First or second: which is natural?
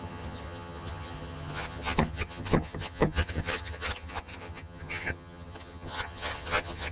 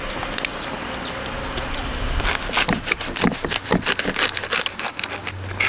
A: second